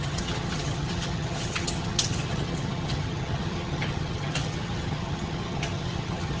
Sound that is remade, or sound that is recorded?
remade